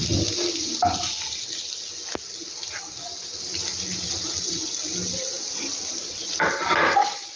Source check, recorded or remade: recorded